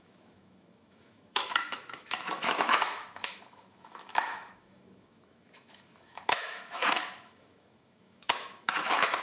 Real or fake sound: fake